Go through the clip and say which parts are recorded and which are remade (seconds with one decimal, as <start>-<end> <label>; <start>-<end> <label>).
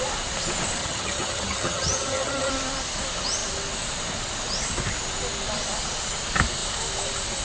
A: 0.0-0.8 recorded; 0.8-2.5 remade; 2.5-7.4 recorded